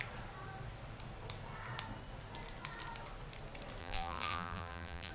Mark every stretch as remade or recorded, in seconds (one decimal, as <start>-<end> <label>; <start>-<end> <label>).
0.0-3.8 recorded; 3.8-5.1 remade